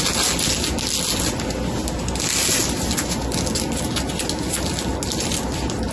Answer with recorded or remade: recorded